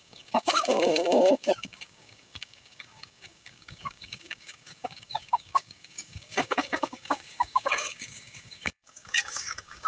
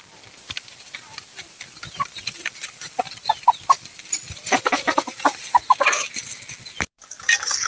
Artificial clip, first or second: first